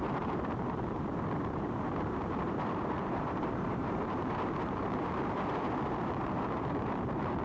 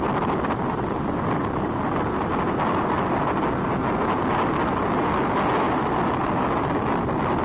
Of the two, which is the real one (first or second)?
second